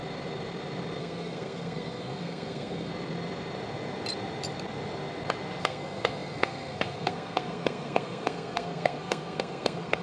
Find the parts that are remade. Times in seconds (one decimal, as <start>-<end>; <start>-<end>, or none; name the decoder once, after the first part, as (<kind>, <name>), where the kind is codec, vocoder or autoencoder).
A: 1.0-2.9 (codec, SNAC); 5.6-10.0